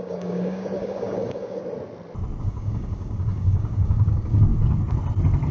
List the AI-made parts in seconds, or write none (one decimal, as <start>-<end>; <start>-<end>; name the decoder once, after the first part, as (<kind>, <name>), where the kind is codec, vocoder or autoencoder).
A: 0.0-1.6 (codec, DAC); 2.4-4.5